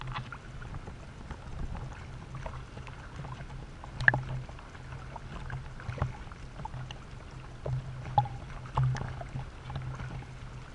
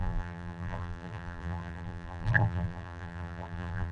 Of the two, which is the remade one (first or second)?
second